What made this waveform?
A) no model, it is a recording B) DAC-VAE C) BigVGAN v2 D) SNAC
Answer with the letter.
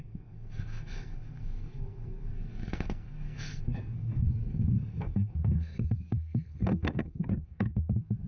D